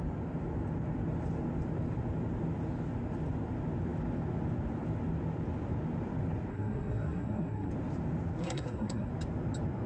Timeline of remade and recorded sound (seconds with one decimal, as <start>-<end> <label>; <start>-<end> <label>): 0.0-6.5 recorded; 6.5-7.7 remade; 7.7-8.4 recorded; 8.4-9.1 remade; 9.1-9.9 recorded